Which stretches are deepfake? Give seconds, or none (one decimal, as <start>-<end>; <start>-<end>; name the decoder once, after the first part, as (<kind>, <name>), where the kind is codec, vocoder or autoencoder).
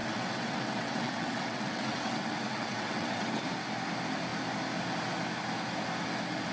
0.0-3.4 (vocoder, WaveNeXt)